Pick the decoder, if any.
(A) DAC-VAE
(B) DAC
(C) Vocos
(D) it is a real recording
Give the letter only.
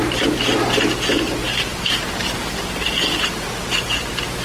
D